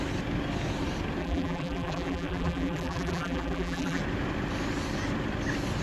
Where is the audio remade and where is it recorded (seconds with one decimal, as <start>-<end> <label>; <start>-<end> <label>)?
0.0-1.2 recorded; 1.2-4.0 remade; 4.0-5.8 recorded